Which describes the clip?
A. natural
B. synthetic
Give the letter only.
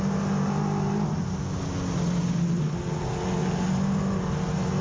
A